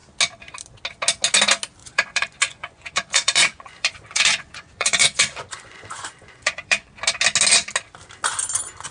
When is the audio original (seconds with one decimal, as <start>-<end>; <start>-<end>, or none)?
0.0-1.8; 6.9-8.9